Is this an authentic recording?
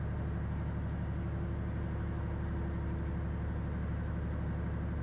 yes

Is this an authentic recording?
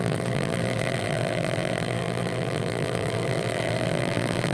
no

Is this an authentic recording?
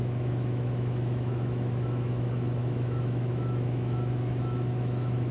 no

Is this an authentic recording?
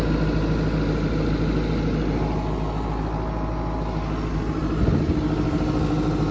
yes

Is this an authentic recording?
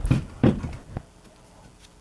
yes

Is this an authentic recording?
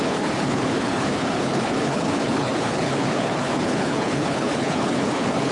no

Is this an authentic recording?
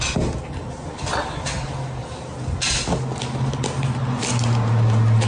yes